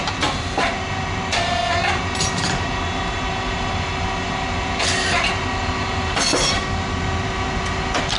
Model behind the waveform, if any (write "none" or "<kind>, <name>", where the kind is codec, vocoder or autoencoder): none